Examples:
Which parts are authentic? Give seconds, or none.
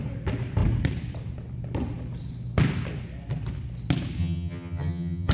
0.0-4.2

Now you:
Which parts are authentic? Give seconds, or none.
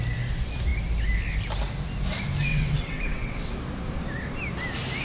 0.0-2.5; 3.5-5.0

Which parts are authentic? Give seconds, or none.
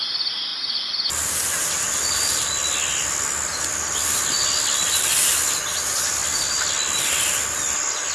0.0-8.1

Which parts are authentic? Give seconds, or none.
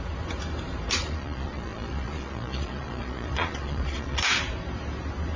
0.0-1.0; 4.2-5.4